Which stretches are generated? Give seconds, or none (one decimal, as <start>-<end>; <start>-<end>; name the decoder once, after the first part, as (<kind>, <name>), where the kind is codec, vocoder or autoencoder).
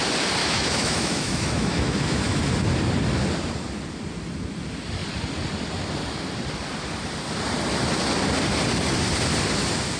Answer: 0.4-2.5 (autoencoder, DAC-VAE)